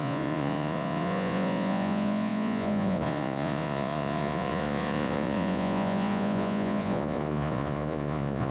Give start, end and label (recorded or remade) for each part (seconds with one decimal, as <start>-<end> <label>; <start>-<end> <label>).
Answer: 0.0-8.5 remade